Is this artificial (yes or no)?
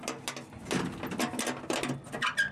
no